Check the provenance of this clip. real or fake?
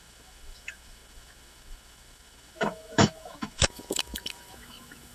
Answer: fake